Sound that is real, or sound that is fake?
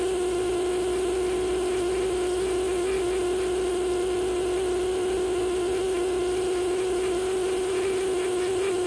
real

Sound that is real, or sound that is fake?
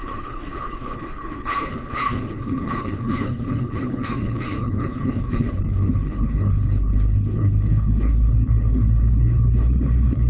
fake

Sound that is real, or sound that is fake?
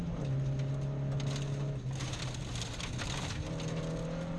real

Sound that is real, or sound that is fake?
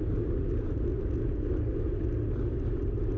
real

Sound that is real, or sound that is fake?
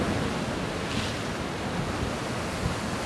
real